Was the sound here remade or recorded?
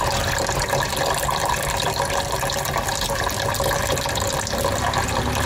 recorded